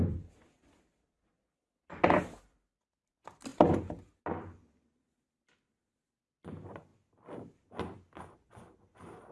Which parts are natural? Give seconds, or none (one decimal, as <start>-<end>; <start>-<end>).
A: 0.0-9.3